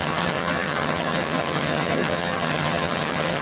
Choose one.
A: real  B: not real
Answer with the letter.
B